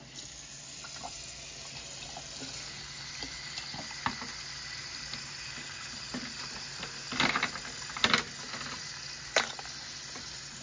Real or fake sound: real